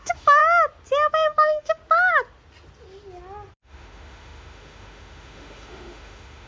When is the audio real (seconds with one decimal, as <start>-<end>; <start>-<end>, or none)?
0.4-1.1; 1.8-3.5